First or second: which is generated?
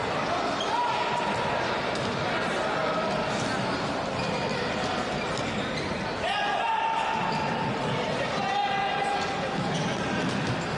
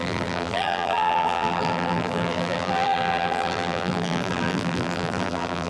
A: second